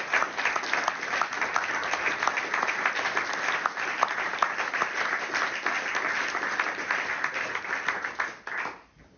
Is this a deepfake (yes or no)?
no